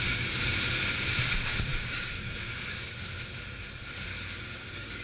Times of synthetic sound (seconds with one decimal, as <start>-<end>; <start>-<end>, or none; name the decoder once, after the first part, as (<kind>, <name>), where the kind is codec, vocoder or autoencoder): 1.7-2.9 (codec, DAC); 4.1-5.0

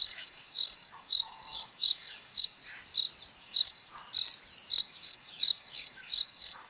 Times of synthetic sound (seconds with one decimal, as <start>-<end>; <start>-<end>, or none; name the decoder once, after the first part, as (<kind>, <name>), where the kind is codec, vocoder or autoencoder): 0.0-2.6 (codec, DAC); 3.4-3.9; 4.8-6.7

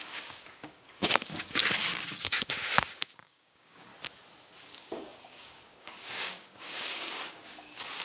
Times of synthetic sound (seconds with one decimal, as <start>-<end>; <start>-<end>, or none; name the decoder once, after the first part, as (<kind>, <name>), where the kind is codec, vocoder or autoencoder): 0.0-3.9 (codec, DAC); 4.6-8.0

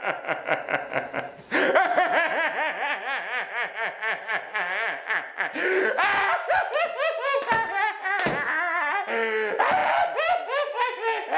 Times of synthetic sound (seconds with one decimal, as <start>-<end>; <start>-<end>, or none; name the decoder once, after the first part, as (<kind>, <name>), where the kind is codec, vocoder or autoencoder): none

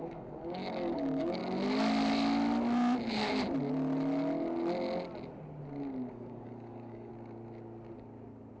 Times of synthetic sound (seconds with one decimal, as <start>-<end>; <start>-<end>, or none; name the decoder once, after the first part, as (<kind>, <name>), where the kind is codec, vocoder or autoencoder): 0.0-1.4 (codec, DAC); 6.1-7.1

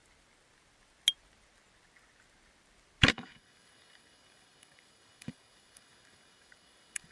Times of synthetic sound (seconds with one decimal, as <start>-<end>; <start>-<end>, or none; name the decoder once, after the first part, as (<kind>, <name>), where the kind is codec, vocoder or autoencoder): 3.1-7.1 (codec, DAC)

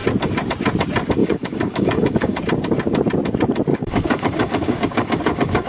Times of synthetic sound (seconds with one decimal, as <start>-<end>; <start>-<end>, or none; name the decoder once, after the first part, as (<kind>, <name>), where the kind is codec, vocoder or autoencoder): 1.2-2.4 (codec, DAC); 3.7-5.7

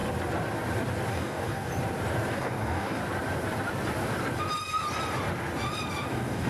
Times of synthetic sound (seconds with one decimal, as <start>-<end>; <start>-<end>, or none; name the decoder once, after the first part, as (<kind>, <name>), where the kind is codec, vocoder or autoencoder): 1.1-1.7 (codec, DAC); 2.3-3.0; 6.1-6.5